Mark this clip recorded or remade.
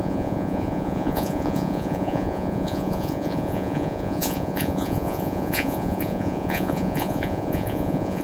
remade